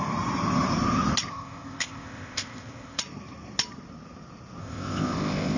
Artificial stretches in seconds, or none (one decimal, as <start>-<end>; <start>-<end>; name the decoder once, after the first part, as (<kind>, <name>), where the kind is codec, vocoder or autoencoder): 1.3-3.0 (codec, ZipCodec); 4.6-5.6